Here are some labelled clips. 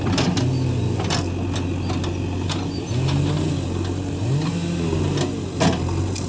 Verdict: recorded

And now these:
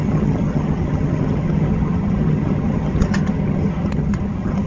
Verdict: remade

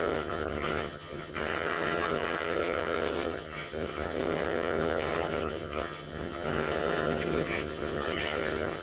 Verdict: remade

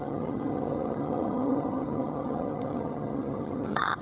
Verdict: remade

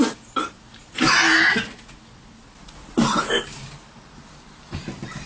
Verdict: recorded